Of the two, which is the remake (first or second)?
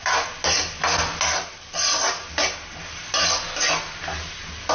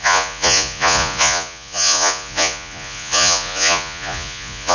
second